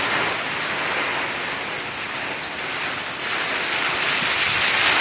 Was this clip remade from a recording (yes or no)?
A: no